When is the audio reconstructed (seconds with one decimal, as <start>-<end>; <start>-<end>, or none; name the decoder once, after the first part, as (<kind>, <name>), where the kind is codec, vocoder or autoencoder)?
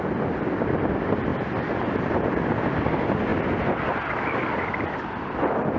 none